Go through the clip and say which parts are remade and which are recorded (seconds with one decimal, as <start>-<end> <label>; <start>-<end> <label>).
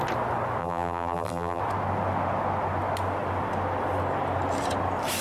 0.0-0.6 recorded; 0.6-1.6 remade; 1.6-5.2 recorded